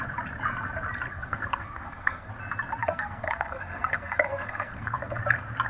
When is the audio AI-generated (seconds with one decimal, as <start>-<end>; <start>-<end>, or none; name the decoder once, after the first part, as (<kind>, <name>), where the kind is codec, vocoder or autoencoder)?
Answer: 1.1-2.3 (codec, SNAC); 2.8-5.2